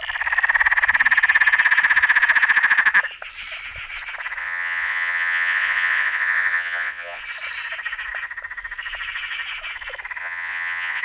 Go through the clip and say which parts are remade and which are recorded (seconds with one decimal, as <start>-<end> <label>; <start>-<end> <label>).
0.0-4.4 recorded; 4.4-7.2 remade; 7.2-10.2 recorded; 10.2-11.0 remade